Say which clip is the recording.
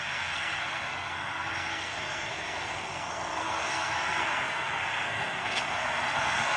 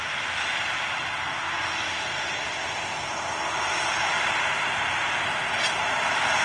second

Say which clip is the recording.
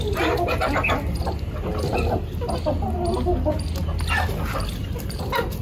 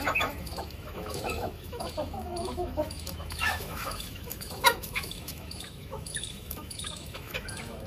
first